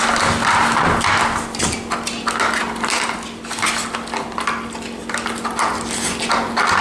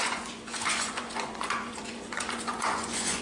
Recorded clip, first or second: first